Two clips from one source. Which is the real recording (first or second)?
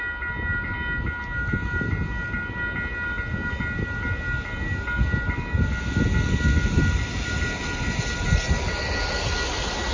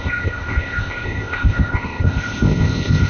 first